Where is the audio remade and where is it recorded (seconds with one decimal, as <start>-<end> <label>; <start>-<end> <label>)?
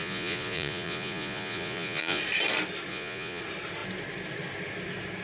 0.0-2.2 remade; 2.2-2.9 recorded; 2.9-3.4 remade; 3.4-5.2 recorded